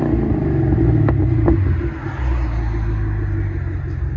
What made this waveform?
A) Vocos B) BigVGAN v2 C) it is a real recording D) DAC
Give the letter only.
C